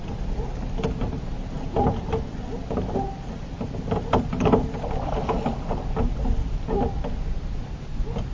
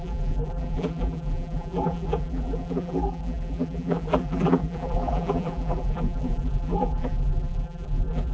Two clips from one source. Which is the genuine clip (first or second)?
first